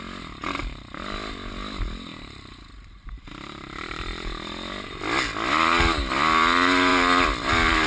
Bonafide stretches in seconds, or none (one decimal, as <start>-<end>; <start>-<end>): 0.0-0.6; 1.5-2.1; 5.0-7.9